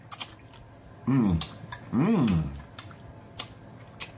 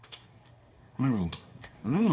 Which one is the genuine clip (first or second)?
first